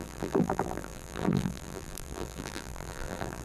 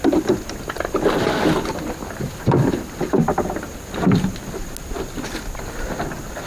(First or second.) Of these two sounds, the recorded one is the second